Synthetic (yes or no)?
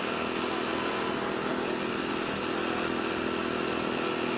no